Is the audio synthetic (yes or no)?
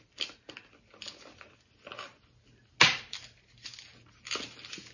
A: no